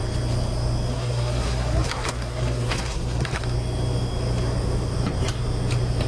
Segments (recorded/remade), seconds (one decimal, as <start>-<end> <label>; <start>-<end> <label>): 0.0-0.9 recorded; 0.9-3.4 remade; 3.4-6.1 recorded